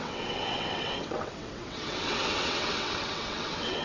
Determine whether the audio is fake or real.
fake